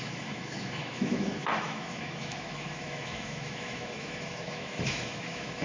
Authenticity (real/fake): fake